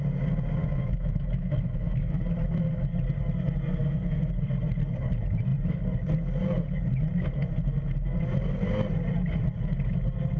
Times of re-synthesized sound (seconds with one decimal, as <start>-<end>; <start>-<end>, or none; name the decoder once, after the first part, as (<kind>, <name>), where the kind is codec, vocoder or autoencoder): 0.6-2.2 (autoencoder, DAC-VAE); 3.8-4.3